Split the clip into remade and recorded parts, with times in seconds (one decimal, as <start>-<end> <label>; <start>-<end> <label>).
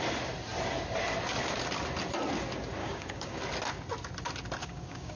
0.0-2.8 recorded; 2.8-3.4 remade; 3.4-4.6 recorded; 4.6-5.2 remade